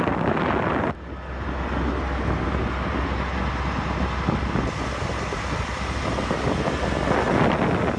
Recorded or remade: recorded